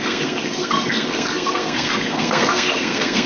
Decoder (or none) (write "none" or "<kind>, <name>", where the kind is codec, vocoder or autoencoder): codec, SNAC